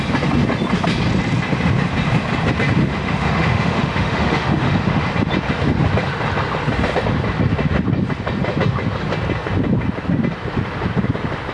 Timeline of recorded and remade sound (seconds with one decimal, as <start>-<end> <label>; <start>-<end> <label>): 0.0-2.8 recorded; 2.8-5.0 remade; 5.0-11.5 recorded